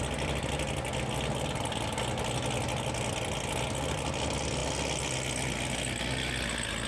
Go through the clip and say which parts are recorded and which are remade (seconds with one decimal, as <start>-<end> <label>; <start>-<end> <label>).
0.0-6.9 recorded